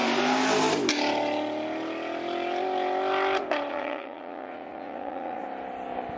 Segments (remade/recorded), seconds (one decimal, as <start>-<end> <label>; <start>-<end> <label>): 0.0-3.7 recorded; 3.7-5.4 remade; 5.4-6.2 recorded